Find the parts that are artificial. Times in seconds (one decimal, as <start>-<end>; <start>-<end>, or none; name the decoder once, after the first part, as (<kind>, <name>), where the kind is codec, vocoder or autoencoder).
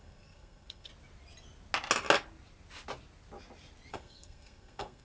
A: 0.0-0.9 (codec, SNAC); 3.9-5.0